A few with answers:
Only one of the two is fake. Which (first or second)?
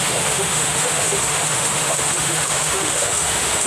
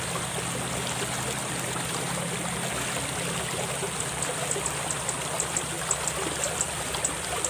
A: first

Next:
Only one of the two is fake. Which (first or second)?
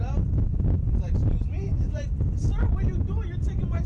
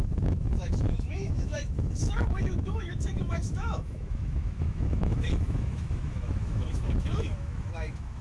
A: second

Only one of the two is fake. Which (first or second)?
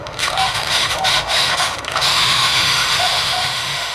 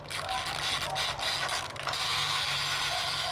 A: first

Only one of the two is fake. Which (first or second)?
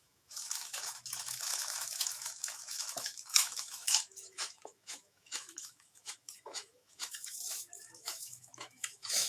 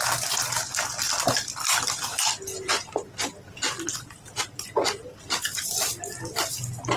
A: first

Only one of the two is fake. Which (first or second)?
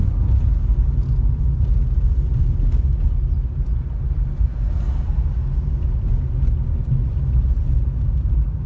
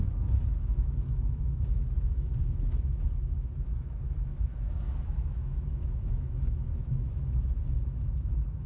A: second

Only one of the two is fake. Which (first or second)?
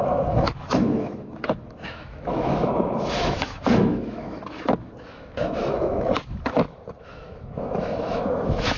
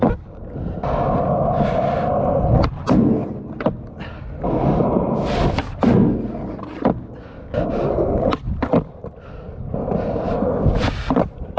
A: first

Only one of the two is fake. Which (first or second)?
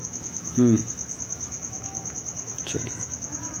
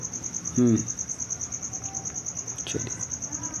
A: first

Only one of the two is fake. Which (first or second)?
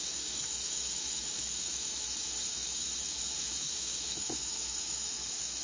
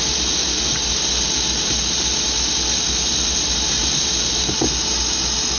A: first